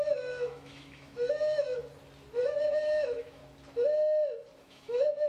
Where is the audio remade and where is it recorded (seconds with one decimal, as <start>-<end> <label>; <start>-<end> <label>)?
0.0-1.8 remade; 1.8-2.4 recorded; 2.4-3.4 remade; 3.4-4.6 recorded; 4.6-5.3 remade